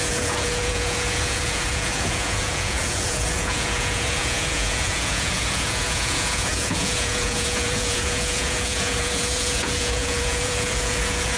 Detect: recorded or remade remade